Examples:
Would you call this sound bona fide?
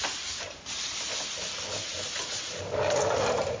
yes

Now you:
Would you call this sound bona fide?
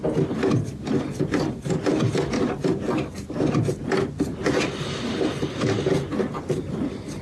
yes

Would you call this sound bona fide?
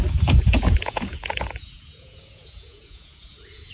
no